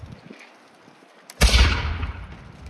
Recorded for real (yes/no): yes